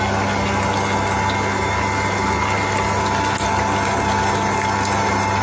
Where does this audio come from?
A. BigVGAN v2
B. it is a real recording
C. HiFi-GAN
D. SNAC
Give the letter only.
B